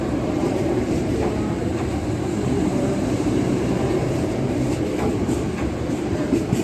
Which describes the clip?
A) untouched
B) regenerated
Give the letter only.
B